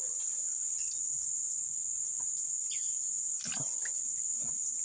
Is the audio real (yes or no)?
yes